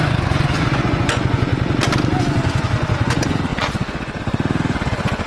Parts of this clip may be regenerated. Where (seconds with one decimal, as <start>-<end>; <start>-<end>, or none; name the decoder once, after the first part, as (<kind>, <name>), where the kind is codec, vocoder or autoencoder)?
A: 0.0-1.5 (vocoder, Vocos); 2.2-5.3